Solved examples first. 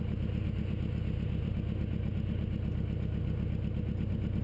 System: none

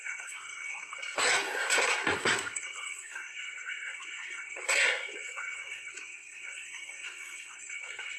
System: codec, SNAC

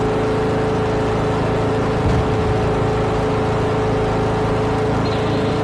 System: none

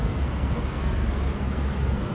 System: codec, SNAC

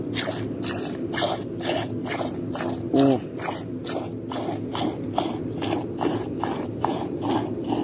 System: none